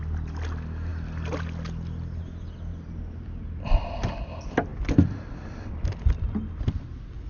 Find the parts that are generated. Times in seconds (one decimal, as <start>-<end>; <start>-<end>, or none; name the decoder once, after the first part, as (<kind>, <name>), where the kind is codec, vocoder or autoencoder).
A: none